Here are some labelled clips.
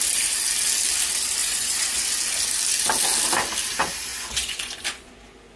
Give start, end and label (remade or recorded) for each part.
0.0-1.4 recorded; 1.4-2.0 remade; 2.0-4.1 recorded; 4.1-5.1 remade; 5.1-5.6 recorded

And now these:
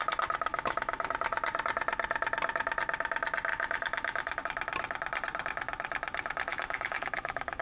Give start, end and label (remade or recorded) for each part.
0.0-0.5 recorded; 0.5-1.1 remade; 1.1-3.5 recorded; 3.5-4.4 remade; 4.4-6.5 recorded; 6.5-7.6 remade

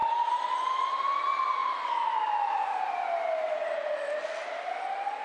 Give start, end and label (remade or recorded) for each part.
0.0-5.2 recorded

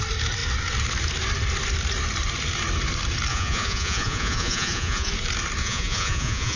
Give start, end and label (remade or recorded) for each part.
0.0-3.3 recorded; 3.3-5.1 remade; 5.1-5.6 recorded; 5.6-6.6 remade